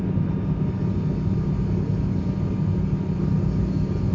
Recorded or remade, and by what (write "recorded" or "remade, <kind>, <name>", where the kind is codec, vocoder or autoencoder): recorded